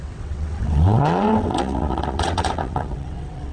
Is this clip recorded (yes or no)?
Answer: no